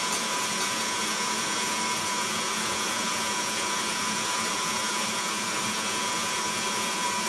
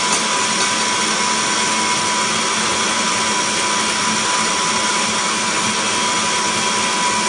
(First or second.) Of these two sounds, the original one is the second